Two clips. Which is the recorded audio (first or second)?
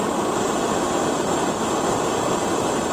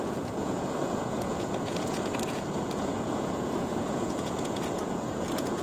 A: first